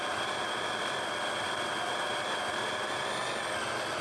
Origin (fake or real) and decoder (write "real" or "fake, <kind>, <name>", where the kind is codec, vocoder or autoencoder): real